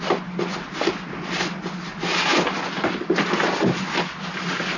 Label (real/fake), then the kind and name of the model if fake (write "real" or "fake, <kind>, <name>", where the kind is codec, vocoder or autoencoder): real